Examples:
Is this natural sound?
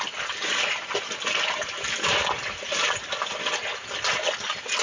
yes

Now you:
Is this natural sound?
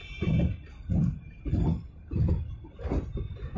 yes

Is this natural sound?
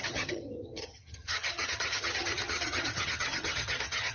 no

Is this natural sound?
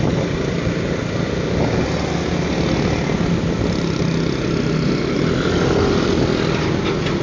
yes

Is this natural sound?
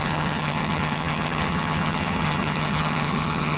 no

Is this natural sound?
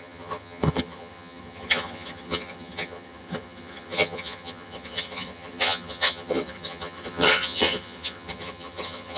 no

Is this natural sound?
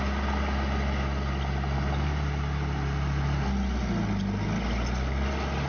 yes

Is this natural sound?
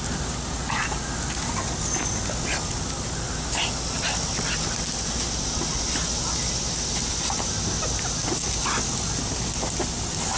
yes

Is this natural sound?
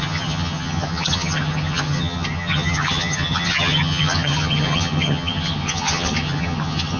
no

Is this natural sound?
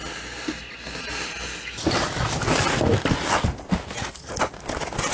yes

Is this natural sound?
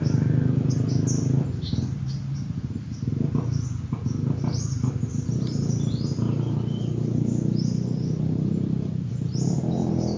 yes